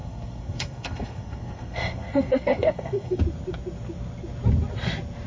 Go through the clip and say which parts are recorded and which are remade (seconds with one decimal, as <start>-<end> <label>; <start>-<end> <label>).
0.0-3.2 remade; 3.2-5.3 recorded